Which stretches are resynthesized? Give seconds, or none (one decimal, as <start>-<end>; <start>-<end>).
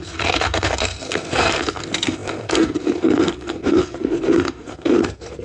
0.0-5.4